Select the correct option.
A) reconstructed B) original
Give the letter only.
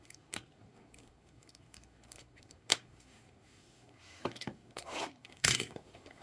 A